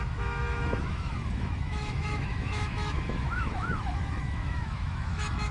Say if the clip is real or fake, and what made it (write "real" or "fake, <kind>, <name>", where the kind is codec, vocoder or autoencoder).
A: fake, autoencoder, DAC-VAE